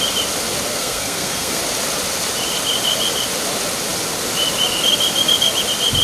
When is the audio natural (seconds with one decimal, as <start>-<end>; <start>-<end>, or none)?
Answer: 0.0-0.7; 1.6-6.0

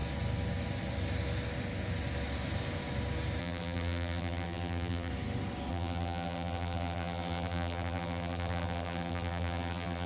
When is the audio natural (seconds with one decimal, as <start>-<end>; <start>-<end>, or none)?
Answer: 0.0-3.4; 5.1-5.7

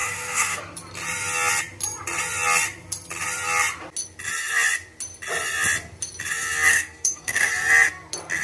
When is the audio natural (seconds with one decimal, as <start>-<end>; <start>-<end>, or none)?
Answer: 0.6-6.7; 7.5-8.4